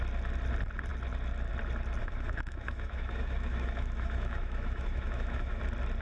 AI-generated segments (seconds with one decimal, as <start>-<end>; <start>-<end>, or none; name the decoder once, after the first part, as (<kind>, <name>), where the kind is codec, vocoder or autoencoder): 2.0-5.6 (autoencoder, DAC-VAE)